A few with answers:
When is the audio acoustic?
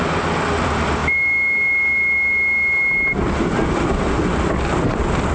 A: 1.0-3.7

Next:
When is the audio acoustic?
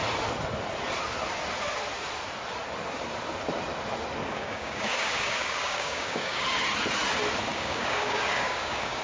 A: 0.0-4.3; 6.4-7.5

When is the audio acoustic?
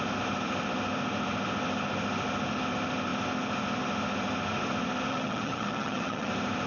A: 0.0-5.1; 6.3-6.7